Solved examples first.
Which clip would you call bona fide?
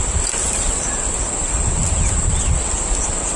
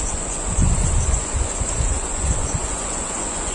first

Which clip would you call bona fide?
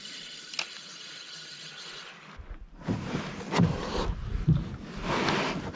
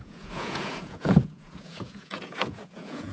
first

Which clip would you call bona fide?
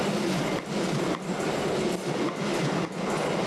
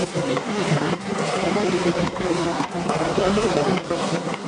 first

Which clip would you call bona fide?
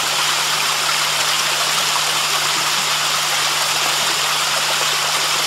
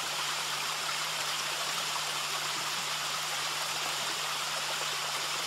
first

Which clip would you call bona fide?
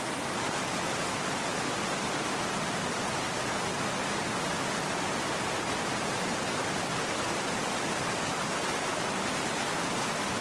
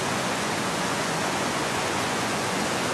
first